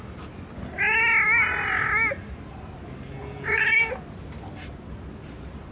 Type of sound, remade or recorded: recorded